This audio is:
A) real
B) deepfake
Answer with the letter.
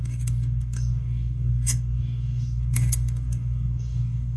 B